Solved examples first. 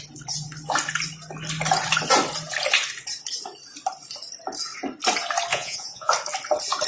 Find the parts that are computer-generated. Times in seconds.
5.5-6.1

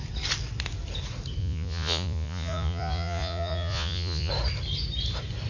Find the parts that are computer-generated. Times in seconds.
1.4-4.3

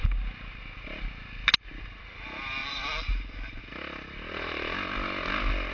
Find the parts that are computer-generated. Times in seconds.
2.6-3.6